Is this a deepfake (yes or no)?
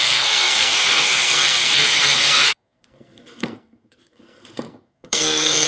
yes